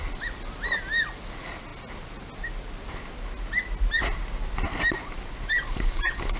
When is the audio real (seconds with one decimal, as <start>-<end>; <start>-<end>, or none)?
0.0-6.4